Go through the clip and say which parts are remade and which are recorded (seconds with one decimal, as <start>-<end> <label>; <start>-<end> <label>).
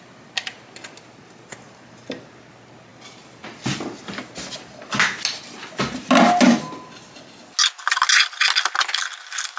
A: 0.0-9.6 recorded